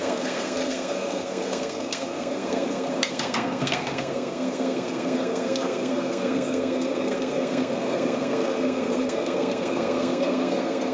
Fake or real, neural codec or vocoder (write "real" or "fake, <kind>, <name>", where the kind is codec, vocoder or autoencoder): fake, codec, SNAC